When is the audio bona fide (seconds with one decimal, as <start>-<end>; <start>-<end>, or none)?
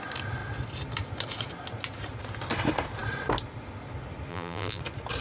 0.0-4.3; 4.8-5.2